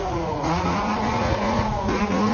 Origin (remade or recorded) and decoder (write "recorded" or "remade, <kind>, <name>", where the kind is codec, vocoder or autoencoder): remade, vocoder, Vocos